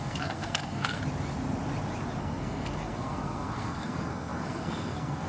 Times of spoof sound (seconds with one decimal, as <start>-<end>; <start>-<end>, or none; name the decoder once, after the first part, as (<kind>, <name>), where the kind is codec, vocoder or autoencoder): 0.0-1.0 (codec, SNAC); 2.2-5.3